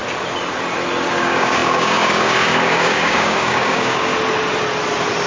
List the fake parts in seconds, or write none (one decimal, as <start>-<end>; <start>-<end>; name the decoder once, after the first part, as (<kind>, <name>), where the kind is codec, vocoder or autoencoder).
1.1-4.1 (codec, DAC)